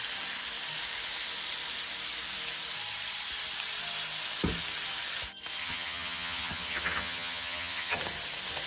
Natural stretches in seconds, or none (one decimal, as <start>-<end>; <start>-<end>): 0.0-5.6; 8.0-8.7